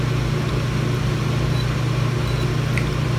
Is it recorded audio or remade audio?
recorded